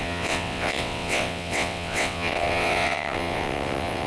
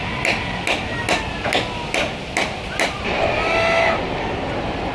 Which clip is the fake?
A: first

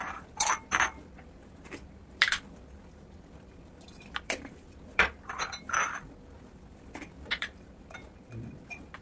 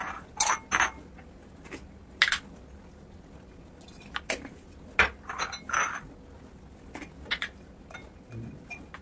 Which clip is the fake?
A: first